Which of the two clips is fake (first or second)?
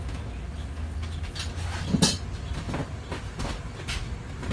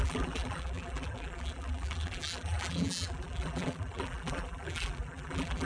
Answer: second